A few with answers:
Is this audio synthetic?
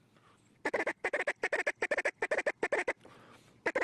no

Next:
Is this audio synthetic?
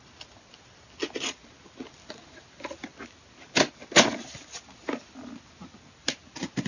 no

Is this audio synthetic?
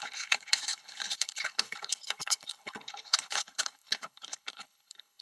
yes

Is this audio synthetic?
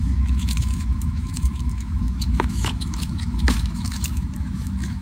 yes